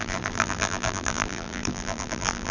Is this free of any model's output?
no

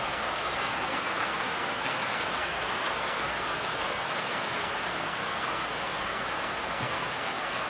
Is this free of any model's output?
no